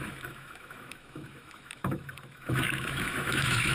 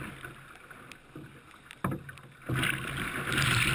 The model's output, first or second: first